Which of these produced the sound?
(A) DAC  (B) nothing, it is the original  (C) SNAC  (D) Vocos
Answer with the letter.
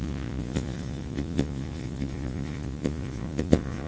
D